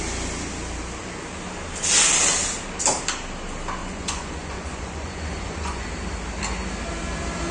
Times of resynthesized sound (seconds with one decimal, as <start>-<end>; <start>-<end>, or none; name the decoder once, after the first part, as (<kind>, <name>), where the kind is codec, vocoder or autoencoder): 3.8-5.9 (vocoder, Vocos)

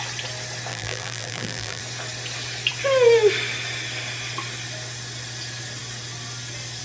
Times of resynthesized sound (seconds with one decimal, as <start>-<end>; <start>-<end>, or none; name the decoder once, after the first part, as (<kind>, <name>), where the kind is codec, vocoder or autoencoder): 0.7-1.8 (vocoder, BigVGAN v2)

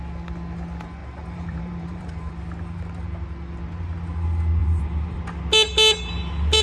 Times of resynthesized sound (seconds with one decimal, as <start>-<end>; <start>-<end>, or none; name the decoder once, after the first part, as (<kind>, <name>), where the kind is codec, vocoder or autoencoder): 1.0-2.3 (vocoder, BigVGAN v2); 4.6-5.2

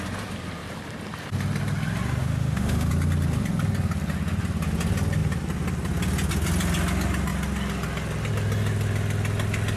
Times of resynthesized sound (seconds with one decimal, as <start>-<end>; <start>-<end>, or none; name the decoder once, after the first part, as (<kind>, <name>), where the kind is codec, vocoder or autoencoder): 2.2-2.9 (autoencoder, DAC-VAE)

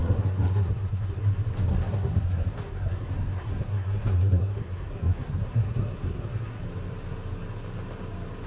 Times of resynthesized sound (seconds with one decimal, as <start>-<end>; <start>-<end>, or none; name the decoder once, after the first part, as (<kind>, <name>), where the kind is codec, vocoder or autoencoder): 0.0-1.2 (codec, SNAC); 1.7-6.6

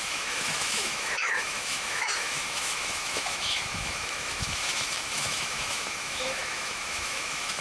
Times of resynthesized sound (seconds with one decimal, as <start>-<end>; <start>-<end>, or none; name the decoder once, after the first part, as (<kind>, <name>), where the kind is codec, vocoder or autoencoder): 0.0-7.6 (autoencoder, DAC-VAE)